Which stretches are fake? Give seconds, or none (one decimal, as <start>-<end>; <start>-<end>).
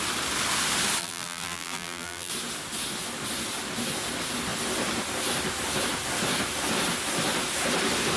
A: 1.0-2.3